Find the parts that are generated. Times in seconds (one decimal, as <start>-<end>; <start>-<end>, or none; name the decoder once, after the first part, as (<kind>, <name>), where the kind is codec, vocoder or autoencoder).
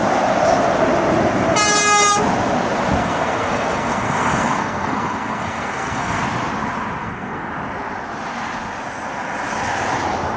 3.0-6.2 (codec, SNAC); 7.0-7.5